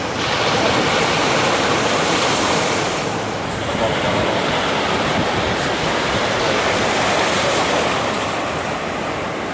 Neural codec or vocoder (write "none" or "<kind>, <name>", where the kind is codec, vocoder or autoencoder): none